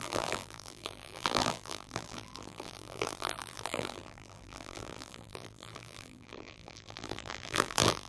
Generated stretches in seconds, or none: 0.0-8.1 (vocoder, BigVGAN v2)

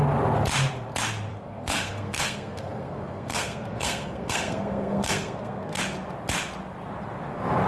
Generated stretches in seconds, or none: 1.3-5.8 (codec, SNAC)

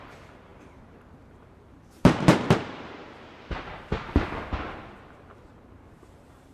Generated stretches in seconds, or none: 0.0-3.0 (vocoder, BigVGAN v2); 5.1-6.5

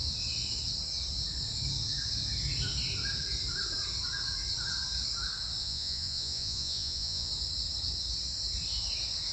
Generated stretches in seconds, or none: 5.6-7.3 (vocoder, Vocos)

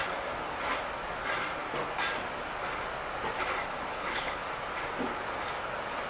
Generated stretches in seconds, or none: 3.9-4.4 (codec, HILCodec)

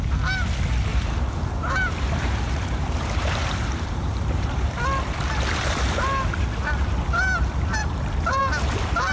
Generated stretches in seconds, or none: 0.9-4.8 (vocoder, BigVGAN v2); 7.8-8.4

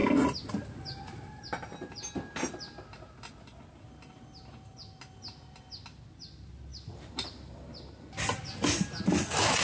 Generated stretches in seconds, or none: none